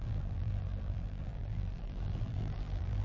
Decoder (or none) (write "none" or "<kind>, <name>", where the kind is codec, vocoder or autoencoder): vocoder, BigVGAN v2